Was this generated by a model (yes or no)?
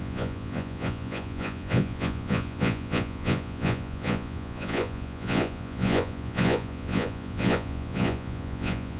yes